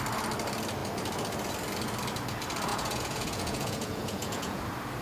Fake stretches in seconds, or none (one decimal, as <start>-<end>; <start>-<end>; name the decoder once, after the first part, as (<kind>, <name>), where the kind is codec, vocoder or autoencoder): 2.7-4.6 (vocoder, Vocos)